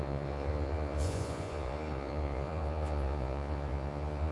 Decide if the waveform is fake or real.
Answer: fake